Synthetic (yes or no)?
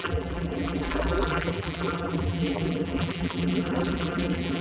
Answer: yes